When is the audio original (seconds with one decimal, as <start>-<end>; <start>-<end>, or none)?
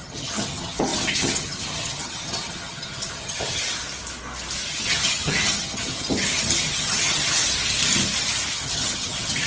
3.6-4.7; 6.1-6.7; 7.4-8.5